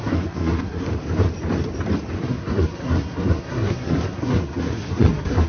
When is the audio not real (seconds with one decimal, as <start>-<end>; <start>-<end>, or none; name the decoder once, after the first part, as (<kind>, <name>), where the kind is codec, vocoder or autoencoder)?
0.0-0.9 (codec, SNAC); 2.2-5.5